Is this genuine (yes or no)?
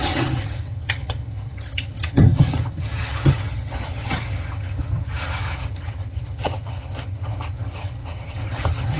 no